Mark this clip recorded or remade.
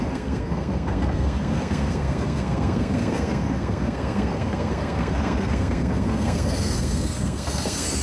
remade